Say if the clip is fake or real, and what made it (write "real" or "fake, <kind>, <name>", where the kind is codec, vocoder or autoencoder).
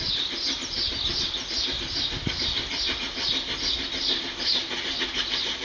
real